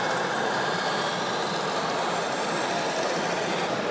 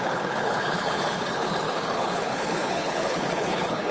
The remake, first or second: second